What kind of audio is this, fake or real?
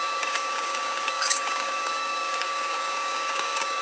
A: fake